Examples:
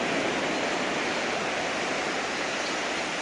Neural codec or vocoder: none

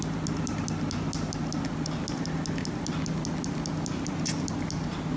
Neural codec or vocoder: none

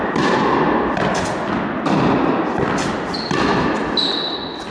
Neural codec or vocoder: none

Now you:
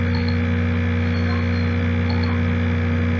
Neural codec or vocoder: none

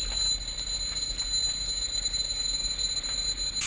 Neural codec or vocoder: none